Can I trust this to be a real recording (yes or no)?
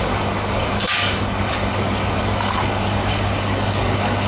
no